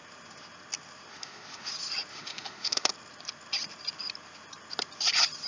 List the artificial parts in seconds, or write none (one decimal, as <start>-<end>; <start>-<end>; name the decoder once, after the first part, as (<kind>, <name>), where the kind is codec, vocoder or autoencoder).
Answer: 1.1-1.7 (autoencoder, DAC-VAE); 2.1-2.9